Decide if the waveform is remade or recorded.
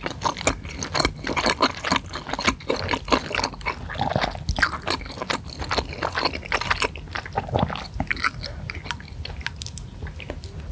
recorded